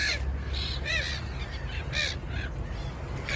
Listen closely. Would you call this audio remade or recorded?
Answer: recorded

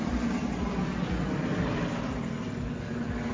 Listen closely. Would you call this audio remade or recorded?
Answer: recorded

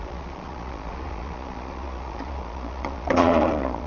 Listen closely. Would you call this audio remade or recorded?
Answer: remade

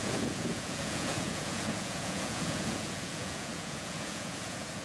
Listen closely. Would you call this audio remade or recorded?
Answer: remade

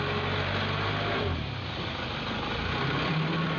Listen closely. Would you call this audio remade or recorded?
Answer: recorded